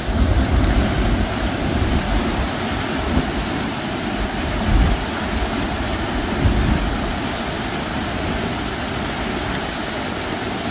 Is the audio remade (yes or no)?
no